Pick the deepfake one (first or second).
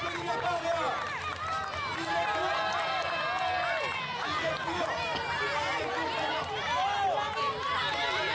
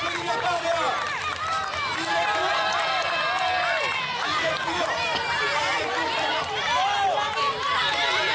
second